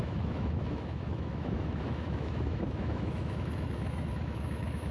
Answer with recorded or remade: remade